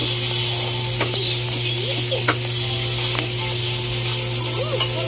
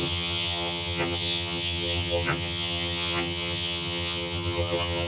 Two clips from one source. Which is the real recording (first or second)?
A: first